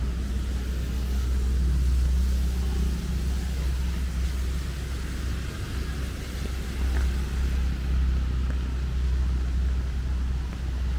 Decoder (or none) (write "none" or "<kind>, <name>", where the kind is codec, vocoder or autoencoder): none